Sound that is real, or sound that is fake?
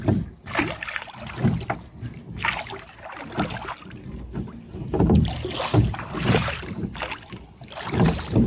real